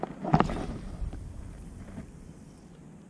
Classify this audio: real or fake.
real